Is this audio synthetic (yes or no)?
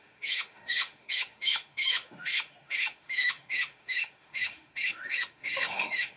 yes